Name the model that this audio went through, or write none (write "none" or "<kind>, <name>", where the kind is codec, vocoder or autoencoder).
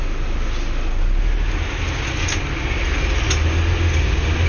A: none